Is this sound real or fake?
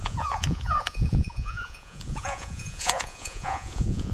fake